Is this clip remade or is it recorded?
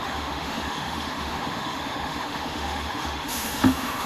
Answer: remade